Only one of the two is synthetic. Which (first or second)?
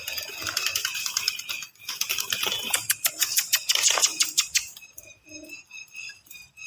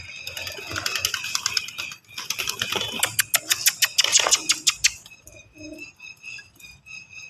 first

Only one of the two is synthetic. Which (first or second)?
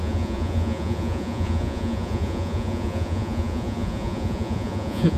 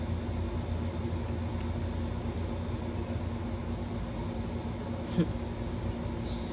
first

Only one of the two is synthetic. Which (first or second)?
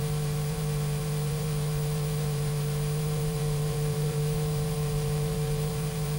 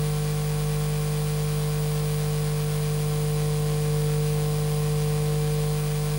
first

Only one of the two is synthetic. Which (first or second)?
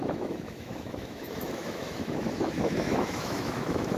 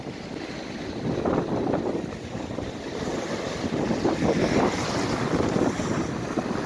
first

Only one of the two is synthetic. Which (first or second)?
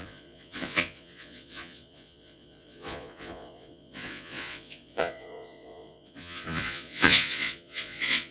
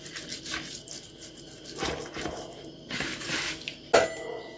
first